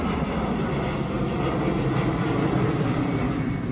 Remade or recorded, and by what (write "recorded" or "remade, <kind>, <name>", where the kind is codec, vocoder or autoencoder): remade, vocoder, BigVGAN v2